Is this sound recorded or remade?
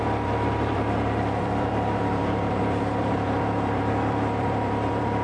remade